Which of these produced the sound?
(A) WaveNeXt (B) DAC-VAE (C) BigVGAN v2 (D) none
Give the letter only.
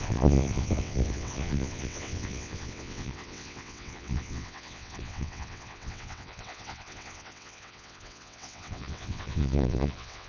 A